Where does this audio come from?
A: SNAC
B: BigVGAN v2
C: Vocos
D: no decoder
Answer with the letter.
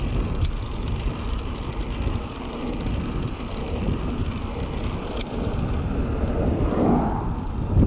D